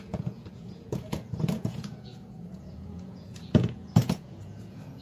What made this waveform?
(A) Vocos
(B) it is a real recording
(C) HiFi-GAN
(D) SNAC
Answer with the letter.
A